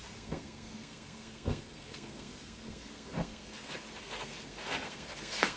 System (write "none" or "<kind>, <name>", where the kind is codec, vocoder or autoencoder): codec, SNAC